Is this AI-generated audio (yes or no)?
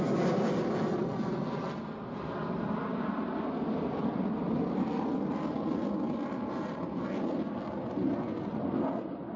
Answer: no